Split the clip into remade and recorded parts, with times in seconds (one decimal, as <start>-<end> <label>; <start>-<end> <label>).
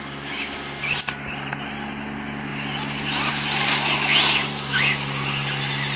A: 0.0-6.0 recorded